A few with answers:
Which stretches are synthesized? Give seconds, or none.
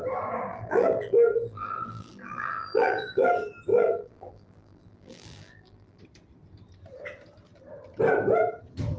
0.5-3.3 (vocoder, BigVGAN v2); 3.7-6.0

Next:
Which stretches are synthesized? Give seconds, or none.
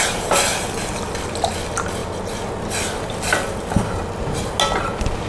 0.5-1.3 (vocoder, BigVGAN v2)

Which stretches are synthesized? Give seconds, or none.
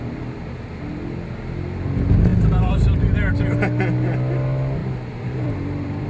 4.8-6.1 (vocoder, BigVGAN v2)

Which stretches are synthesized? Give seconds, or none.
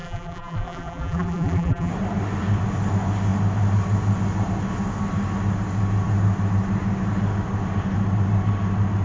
0.0-1.9 (vocoder, BigVGAN v2)